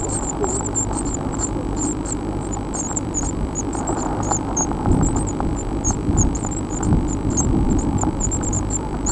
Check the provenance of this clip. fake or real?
fake